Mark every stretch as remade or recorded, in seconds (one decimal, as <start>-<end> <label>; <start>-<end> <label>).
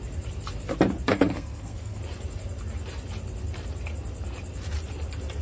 0.0-1.1 recorded; 1.1-2.0 remade; 2.0-5.4 recorded